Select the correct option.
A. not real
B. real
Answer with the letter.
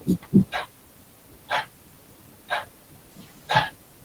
A